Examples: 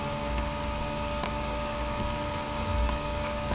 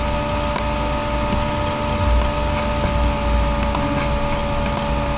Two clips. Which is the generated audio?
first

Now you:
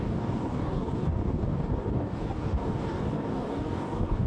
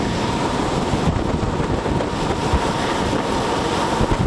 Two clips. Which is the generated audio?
first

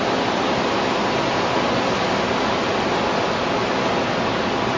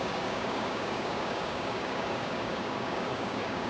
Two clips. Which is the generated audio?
second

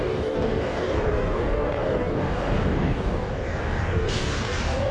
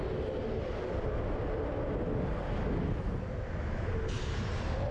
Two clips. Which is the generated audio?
first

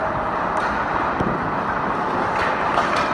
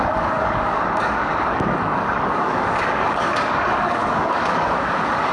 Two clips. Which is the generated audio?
second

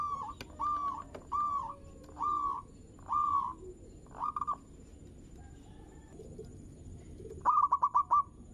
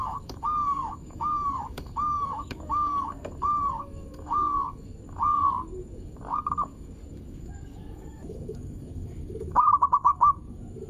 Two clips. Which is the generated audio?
second